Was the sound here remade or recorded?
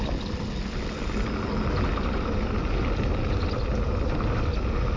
recorded